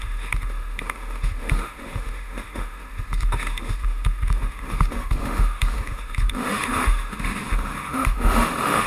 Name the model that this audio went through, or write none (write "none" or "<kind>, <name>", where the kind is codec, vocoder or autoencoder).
autoencoder, DAC-VAE